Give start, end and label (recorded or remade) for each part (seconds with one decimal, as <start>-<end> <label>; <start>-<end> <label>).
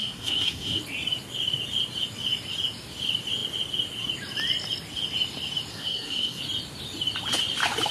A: 0.0-0.8 remade; 0.8-5.7 recorded; 5.7-6.4 remade; 6.4-7.9 recorded